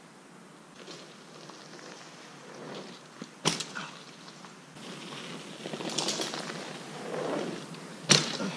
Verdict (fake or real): real